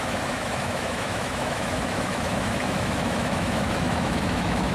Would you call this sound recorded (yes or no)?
no